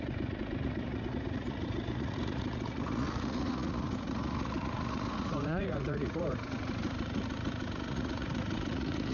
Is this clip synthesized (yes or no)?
yes